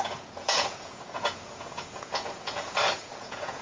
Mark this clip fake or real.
fake